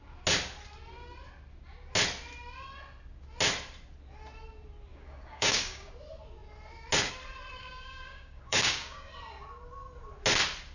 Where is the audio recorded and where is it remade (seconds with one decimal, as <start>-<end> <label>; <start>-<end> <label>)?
0.0-4.9 recorded; 4.9-5.9 remade; 5.9-7.6 recorded; 7.6-9.1 remade; 9.1-10.7 recorded

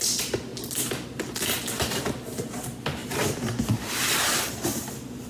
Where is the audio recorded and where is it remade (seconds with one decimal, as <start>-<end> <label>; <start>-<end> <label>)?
0.0-0.5 remade; 0.5-1.9 recorded; 1.9-5.3 remade